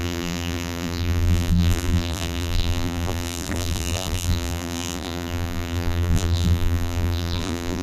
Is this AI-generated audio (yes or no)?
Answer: yes